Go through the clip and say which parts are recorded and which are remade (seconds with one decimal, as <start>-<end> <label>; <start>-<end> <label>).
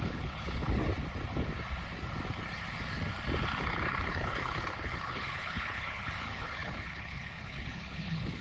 0.0-0.8 remade; 0.8-4.1 recorded; 4.1-8.4 remade